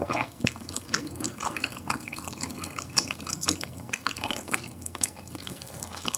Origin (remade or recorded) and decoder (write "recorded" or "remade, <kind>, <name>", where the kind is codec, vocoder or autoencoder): remade, codec, SNAC